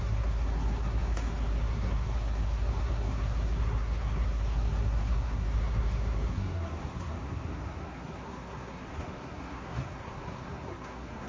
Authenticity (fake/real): fake